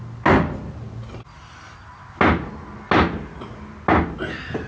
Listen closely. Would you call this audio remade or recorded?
recorded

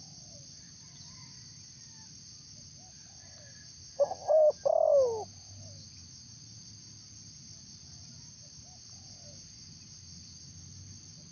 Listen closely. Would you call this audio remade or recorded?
recorded